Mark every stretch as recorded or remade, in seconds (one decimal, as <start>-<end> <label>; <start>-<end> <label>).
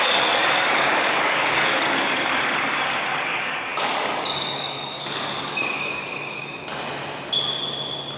0.0-6.5 remade; 6.5-8.2 recorded